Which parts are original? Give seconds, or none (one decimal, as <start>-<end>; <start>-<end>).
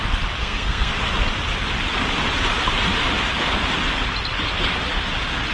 0.0-0.4; 0.9-5.5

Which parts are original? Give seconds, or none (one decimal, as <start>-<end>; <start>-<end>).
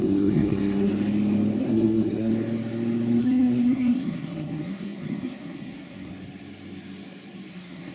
0.9-1.6; 2.3-3.2; 6.1-7.5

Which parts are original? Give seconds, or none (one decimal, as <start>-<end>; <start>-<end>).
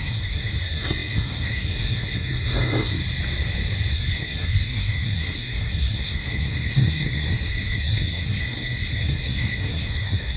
3.0-3.9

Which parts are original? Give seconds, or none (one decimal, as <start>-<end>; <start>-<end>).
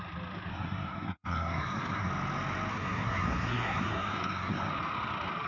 0.0-0.5; 2.1-2.7; 4.7-5.5